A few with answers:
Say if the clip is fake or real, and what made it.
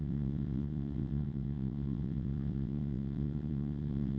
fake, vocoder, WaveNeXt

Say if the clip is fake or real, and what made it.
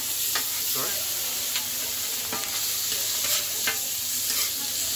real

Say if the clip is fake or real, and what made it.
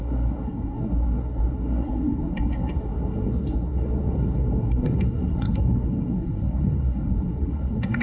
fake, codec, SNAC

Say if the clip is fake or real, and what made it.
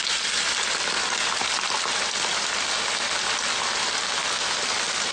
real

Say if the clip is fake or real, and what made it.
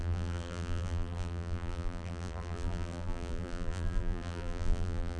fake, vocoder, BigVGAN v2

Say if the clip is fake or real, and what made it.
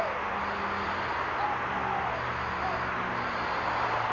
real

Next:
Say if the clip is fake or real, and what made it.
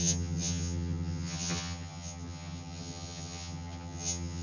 fake, vocoder, HiFi-GAN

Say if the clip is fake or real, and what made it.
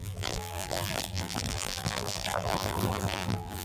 fake, vocoder, BigVGAN v2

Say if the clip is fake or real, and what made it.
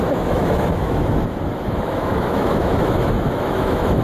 fake, autoencoder, DAC-VAE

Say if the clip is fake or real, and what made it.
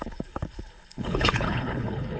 fake, codec, HILCodec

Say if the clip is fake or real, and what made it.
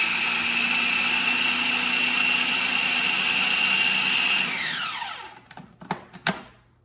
real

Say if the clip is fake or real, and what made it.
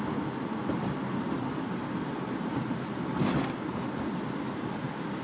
real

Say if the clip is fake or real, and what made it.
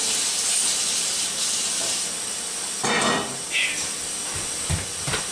real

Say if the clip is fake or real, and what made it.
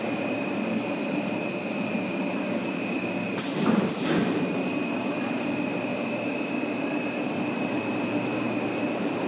fake, vocoder, BigVGAN v2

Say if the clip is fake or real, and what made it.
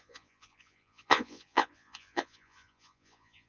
fake, vocoder, Vocos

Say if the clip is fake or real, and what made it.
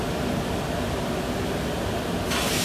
real